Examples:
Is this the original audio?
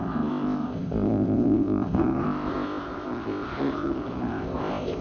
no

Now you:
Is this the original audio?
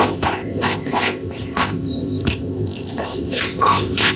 no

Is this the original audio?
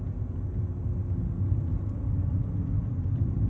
yes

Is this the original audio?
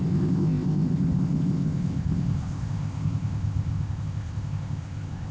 no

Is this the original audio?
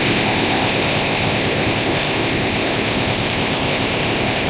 no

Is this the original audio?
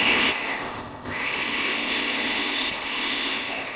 no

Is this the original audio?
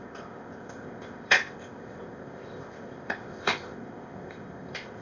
no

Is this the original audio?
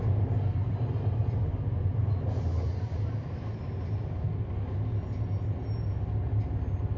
yes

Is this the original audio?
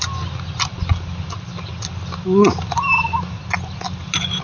yes